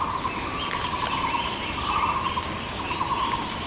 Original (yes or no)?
yes